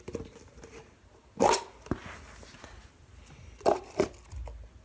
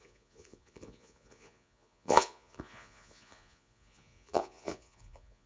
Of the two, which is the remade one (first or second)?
second